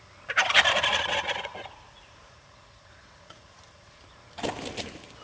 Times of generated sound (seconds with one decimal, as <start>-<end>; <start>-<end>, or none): 0.9-4.0